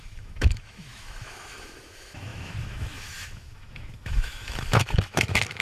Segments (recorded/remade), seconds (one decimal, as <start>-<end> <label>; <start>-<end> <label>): 0.0-5.6 remade